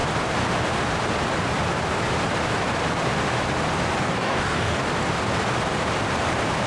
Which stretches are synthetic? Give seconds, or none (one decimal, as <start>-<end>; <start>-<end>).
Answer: 4.0-4.8